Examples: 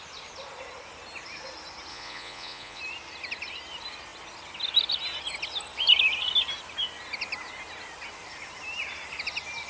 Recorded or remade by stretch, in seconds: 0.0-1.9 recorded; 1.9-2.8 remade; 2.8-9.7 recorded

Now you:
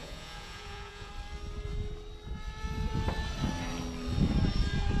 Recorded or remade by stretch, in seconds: 0.0-1.1 remade; 1.1-5.0 recorded

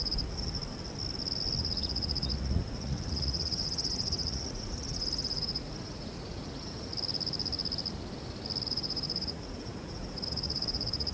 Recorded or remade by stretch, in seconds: 0.0-0.6 remade; 0.6-1.6 recorded; 1.6-6.9 remade; 6.9-8.7 recorded; 8.7-11.1 remade